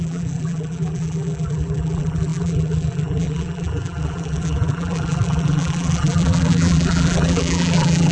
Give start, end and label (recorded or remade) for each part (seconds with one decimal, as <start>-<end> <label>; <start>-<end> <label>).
0.0-8.1 remade